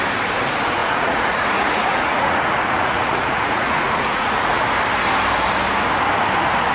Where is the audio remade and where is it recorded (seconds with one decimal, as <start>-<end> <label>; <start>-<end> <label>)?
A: 0.0-0.8 recorded; 0.8-4.6 remade; 4.6-6.7 recorded